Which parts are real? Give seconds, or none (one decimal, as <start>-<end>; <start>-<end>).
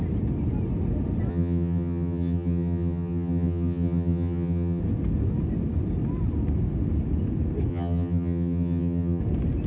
0.0-1.3; 4.8-7.7; 9.2-9.7